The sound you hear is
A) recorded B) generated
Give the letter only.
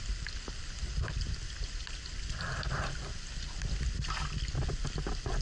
A